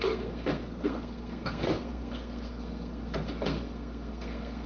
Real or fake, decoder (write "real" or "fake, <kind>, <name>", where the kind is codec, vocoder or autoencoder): fake, codec, SNAC